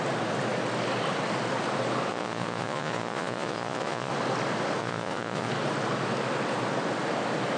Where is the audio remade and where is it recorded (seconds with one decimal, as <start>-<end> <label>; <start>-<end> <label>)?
0.0-2.1 recorded; 2.1-4.1 remade; 4.1-4.8 recorded; 4.8-5.5 remade; 5.5-7.6 recorded